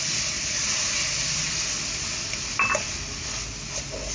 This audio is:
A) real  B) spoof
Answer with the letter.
A